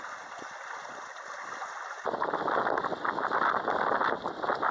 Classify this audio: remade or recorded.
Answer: recorded